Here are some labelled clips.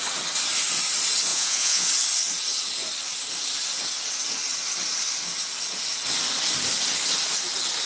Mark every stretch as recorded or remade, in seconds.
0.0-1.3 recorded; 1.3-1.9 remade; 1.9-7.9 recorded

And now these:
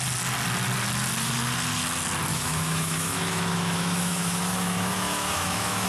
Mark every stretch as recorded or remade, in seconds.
0.0-2.3 recorded; 2.3-5.9 remade

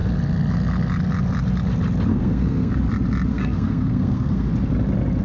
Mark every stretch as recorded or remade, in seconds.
0.0-2.1 recorded; 2.1-2.7 remade; 2.7-3.3 recorded; 3.3-4.5 remade; 4.5-5.2 recorded

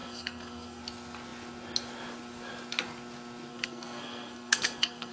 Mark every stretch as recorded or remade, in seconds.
0.0-0.8 remade; 0.8-3.5 recorded; 3.5-5.1 remade

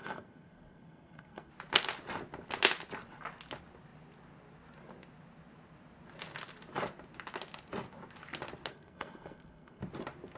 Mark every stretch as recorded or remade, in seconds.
0.0-1.5 remade; 1.5-8.7 recorded; 8.7-9.8 remade; 9.8-10.4 recorded

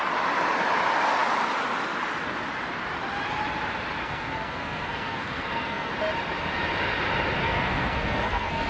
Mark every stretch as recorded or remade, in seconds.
0.0-4.0 recorded; 4.0-5.9 remade; 5.9-7.4 recorded; 7.4-8.7 remade

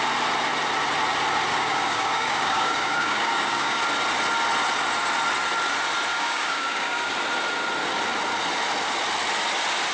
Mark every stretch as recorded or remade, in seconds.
0.0-1.5 recorded; 1.5-3.8 remade; 3.8-6.1 recorded; 6.1-7.1 remade; 7.1-9.9 recorded

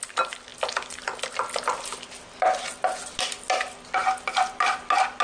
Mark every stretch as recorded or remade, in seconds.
0.0-5.2 recorded